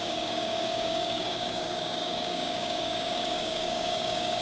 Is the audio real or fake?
fake